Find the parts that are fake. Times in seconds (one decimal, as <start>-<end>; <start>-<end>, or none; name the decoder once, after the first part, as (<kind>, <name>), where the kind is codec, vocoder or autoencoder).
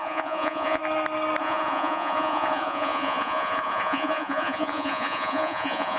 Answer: 0.0-0.8 (vocoder, Vocos); 1.4-6.0